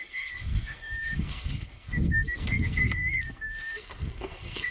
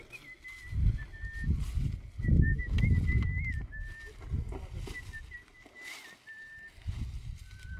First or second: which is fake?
first